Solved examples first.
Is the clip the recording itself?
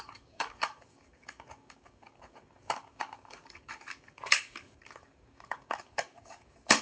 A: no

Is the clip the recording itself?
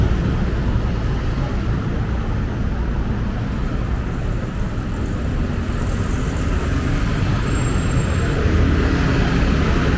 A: yes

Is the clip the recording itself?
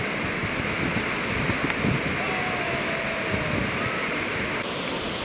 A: yes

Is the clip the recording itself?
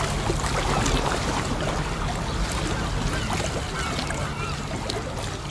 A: yes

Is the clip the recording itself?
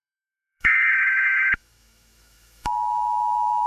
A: no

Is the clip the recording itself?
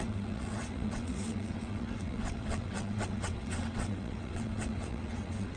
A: no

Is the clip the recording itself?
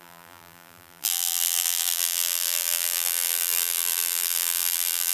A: no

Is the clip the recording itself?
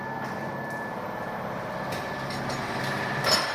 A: yes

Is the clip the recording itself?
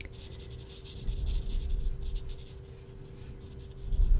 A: yes